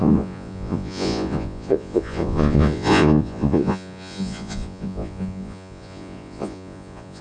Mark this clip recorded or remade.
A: remade